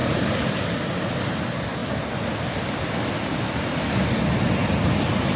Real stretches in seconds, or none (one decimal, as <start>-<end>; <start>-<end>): 0.0-5.4